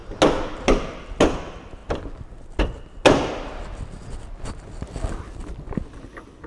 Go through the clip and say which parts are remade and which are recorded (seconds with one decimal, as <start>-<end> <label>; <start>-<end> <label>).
0.0-6.5 recorded